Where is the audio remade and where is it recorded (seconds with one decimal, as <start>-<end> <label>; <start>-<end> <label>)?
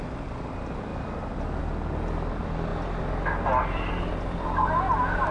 0.0-5.3 recorded